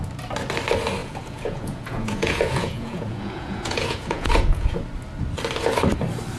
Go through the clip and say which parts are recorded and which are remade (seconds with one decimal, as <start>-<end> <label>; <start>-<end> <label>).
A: 0.0-1.0 recorded; 1.0-4.8 remade; 4.8-6.4 recorded